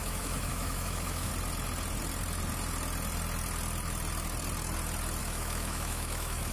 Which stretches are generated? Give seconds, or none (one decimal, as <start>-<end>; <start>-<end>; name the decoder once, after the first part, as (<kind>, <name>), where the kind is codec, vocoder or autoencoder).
0.0-1.3 (autoencoder, DAC-VAE); 5.2-6.5